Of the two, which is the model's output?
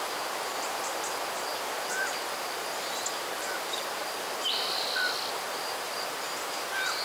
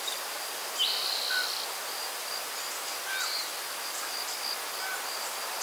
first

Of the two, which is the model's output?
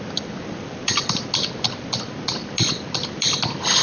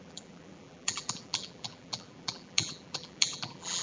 second